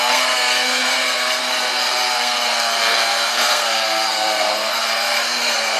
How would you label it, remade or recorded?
remade